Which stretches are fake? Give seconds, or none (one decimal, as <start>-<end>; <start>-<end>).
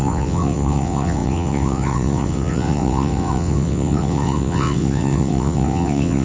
0.0-6.2